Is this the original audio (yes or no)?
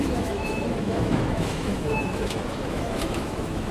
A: no